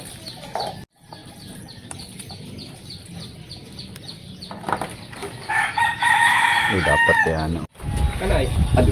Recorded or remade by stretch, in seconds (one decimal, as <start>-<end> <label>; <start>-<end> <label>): 0.0-5.2 recorded; 5.2-6.9 remade; 6.9-8.9 recorded